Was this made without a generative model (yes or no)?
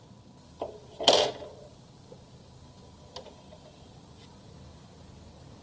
yes